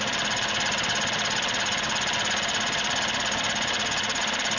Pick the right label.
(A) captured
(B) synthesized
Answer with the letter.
A